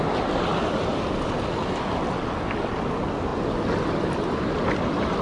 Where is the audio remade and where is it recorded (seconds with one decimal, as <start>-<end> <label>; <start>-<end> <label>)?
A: 0.0-5.2 recorded